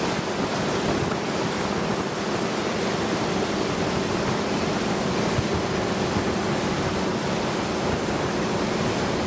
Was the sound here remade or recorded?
recorded